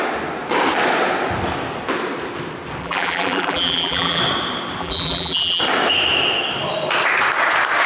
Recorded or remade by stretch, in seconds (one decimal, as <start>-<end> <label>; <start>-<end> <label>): 0.0-2.8 recorded; 2.8-4.2 remade; 4.2-4.8 recorded; 4.8-5.6 remade; 5.6-7.9 recorded